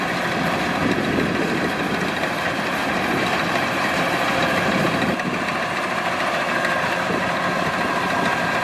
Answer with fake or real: fake